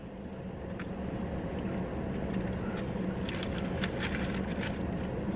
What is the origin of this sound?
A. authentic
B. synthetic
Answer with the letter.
A